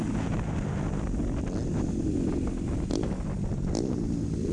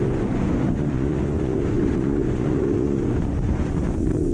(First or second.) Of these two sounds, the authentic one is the first